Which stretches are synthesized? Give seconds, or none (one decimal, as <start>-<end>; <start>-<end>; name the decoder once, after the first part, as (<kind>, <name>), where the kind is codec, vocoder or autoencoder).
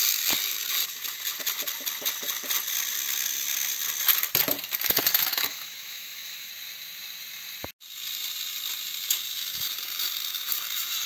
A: 5.3-6.5 (autoencoder, DAC-VAE)